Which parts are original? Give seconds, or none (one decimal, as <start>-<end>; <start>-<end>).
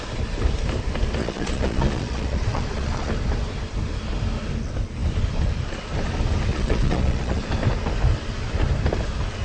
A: 0.0-1.2; 3.1-6.5; 7.4-9.4